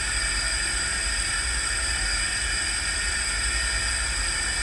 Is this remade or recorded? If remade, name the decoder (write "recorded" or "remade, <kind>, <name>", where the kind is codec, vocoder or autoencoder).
recorded